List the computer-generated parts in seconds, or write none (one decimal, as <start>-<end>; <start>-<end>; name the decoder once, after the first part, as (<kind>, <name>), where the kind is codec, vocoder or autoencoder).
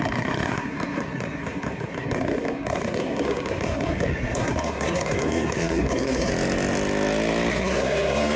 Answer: 0.0-6.3 (codec, SNAC); 7.5-8.4